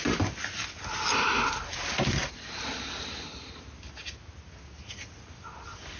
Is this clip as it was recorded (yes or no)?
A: yes